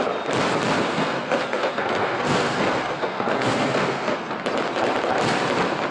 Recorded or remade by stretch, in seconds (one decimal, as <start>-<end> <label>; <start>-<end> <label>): 0.0-0.9 recorded; 0.9-4.3 remade; 4.3-5.9 recorded